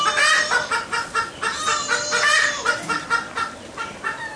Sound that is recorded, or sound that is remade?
recorded